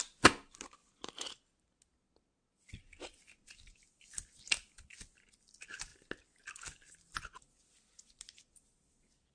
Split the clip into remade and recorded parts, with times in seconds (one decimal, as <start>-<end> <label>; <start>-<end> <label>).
0.0-9.3 recorded